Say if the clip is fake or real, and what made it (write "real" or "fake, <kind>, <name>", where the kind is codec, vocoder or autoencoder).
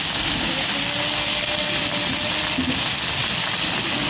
real